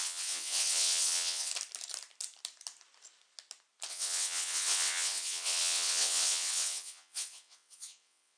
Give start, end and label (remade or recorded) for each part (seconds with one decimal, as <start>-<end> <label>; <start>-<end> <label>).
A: 0.0-1.5 remade; 1.5-3.9 recorded; 3.9-8.4 remade